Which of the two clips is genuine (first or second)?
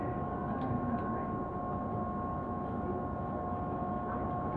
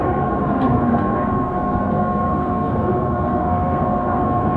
first